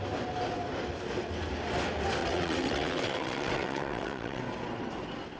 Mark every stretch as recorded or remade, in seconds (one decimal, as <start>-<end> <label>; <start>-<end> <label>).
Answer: 0.0-2.2 recorded; 2.2-4.4 remade; 4.4-5.4 recorded